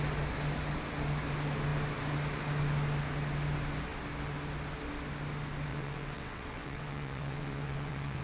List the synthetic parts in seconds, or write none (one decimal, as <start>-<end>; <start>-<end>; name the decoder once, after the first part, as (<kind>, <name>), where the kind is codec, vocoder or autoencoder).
5.7-8.2 (vocoder, WaveNeXt)